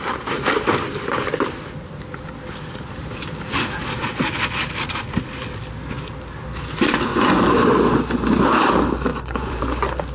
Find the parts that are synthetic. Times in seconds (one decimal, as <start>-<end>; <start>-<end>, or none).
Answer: 7.1-7.7; 9.1-9.6